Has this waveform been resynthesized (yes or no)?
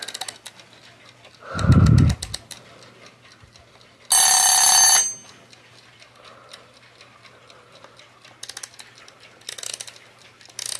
no